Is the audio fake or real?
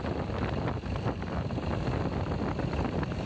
real